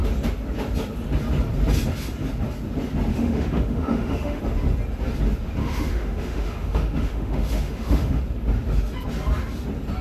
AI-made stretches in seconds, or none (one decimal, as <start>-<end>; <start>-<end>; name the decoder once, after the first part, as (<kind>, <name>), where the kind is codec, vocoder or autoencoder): 3.1-4.4 (autoencoder, DAC-VAE); 5.6-8.2